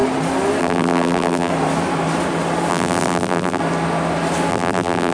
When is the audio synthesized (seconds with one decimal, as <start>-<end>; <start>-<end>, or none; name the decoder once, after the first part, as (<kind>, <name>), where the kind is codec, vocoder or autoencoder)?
0.6-1.5 (vocoder, BigVGAN v2); 2.7-3.6; 4.5-5.1